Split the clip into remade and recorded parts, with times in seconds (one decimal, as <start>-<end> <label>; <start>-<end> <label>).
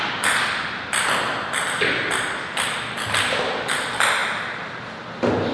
0.0-5.5 recorded